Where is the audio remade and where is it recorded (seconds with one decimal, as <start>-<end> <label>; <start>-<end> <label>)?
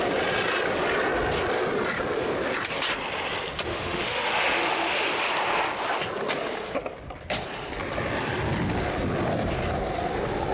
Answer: 0.0-3.7 recorded; 3.7-5.1 remade; 5.1-10.5 recorded